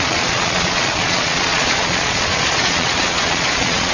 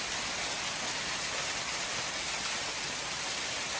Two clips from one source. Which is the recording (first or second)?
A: second